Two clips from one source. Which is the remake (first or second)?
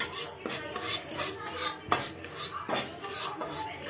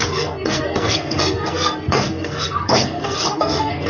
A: second